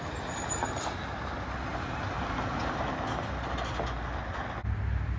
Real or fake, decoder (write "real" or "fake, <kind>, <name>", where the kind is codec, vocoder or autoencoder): real